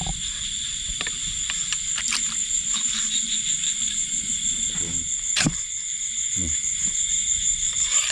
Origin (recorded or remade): remade